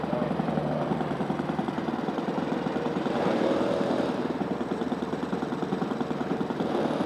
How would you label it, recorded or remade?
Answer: remade